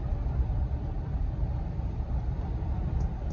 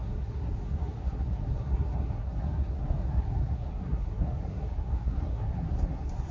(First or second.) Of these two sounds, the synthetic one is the second